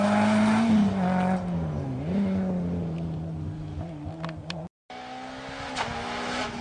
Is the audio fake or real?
real